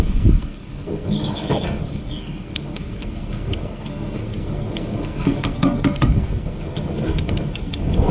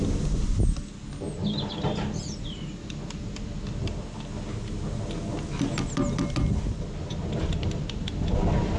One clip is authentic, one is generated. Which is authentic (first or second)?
second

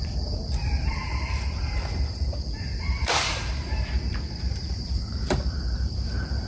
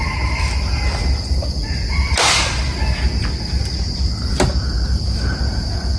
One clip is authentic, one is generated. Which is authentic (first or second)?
second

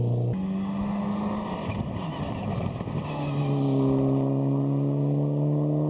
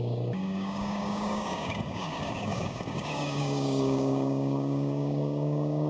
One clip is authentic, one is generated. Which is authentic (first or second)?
first